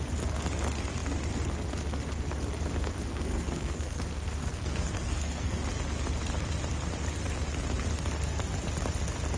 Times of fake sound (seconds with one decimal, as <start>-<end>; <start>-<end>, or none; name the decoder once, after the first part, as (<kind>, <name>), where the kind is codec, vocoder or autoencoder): 3.1-4.0 (codec, SNAC); 4.4-5.6